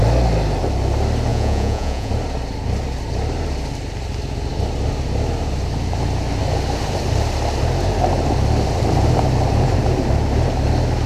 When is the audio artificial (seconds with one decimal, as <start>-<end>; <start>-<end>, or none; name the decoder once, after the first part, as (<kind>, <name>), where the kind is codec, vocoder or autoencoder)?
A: 1.3-2.1 (vocoder, Vocos)